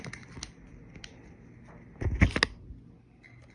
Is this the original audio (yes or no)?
yes